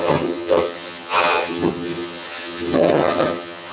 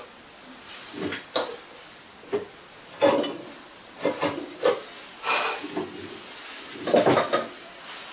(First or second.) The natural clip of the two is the second